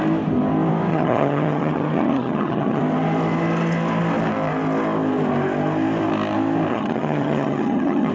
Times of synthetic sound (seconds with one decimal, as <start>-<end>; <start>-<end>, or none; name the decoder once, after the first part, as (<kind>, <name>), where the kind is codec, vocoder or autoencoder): 0.9-2.8 (vocoder, HiFi-GAN); 6.7-8.1

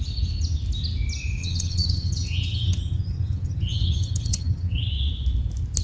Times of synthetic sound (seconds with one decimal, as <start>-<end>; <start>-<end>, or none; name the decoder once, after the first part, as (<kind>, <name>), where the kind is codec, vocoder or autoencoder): 1.4-4.9 (vocoder, HiFi-GAN)

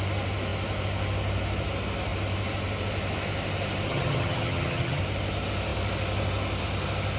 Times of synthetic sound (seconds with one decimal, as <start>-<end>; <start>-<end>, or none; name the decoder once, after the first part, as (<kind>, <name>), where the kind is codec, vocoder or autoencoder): 3.9-5.0 (vocoder, HiFi-GAN)

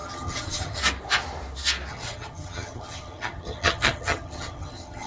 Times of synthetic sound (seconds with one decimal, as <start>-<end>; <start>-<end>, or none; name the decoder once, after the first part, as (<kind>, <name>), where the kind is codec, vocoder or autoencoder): 0.0-0.8 (vocoder, HiFi-GAN); 1.9-5.1

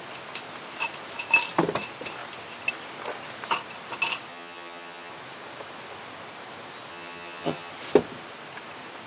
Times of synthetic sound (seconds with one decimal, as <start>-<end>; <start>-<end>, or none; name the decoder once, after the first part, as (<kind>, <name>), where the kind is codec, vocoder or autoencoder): 4.3-5.1 (vocoder, HiFi-GAN); 6.9-7.7

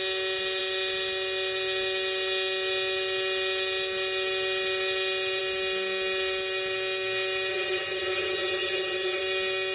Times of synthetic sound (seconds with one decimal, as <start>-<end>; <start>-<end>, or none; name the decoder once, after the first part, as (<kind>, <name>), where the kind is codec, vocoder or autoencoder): 7.5-9.2 (vocoder, HiFi-GAN)

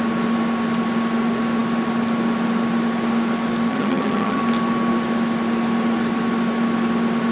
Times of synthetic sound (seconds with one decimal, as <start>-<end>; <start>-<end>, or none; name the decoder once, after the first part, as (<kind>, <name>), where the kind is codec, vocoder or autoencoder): 3.7-4.4 (vocoder, HiFi-GAN)